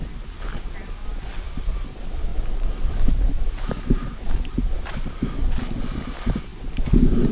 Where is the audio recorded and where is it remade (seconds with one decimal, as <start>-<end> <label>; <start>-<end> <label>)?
0.0-7.3 recorded